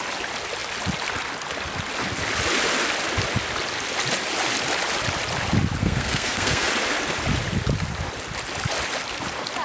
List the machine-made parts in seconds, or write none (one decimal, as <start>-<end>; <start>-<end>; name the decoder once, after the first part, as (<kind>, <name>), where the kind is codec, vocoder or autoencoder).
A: 5.8-6.7 (codec, SNAC)